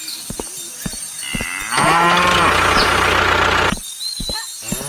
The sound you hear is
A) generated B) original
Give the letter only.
B